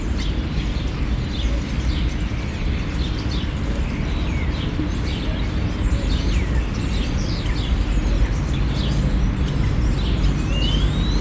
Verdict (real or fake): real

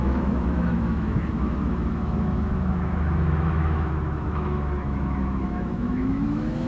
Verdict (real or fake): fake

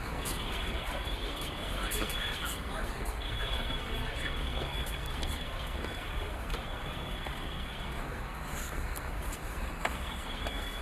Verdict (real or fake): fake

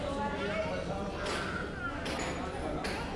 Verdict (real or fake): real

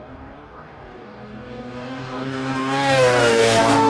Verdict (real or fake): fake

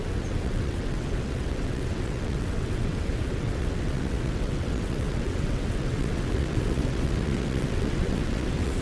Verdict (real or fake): fake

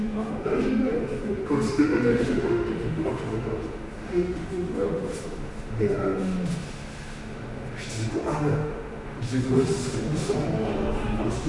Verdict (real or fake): fake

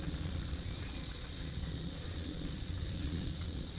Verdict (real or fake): fake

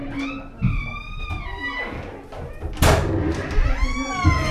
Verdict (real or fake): real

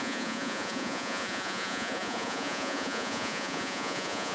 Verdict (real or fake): fake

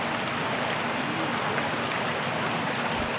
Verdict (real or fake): real